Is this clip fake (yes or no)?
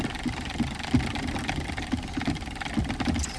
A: no